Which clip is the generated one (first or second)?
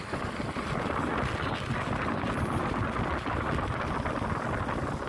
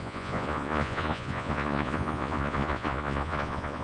second